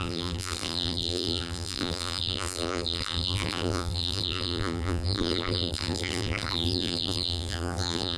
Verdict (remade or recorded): remade